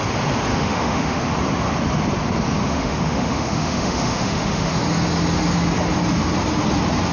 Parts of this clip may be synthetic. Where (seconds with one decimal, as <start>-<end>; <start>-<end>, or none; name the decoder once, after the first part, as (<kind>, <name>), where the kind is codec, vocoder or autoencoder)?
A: 0.5-1.2 (autoencoder, DAC-VAE); 2.6-4.7